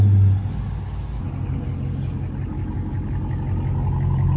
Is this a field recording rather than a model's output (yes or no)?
yes